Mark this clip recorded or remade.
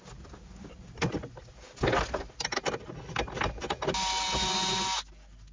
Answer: recorded